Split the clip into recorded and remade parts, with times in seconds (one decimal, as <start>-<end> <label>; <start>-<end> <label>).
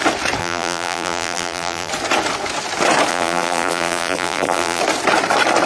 0.0-0.4 recorded; 0.4-1.9 remade; 1.9-3.1 recorded; 3.1-4.8 remade; 4.8-5.7 recorded